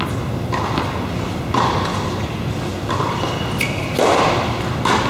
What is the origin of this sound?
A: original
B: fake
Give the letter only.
A